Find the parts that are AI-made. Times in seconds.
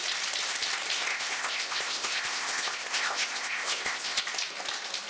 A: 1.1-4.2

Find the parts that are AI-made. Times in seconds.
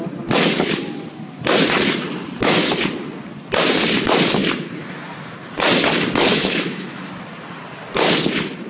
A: 6.3-7.0